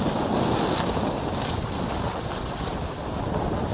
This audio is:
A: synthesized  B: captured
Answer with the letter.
B